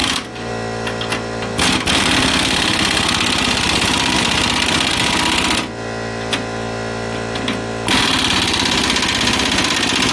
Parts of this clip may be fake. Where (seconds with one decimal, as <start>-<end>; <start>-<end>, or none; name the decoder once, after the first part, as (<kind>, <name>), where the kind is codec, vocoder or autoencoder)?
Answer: 0.0-0.5 (vocoder, BigVGAN v2)